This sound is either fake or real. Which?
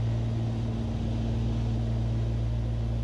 real